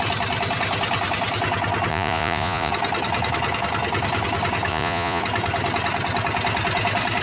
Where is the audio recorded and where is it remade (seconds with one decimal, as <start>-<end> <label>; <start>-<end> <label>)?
0.0-1.9 recorded; 1.9-2.7 remade; 2.7-4.7 recorded; 4.7-5.2 remade; 5.2-7.2 recorded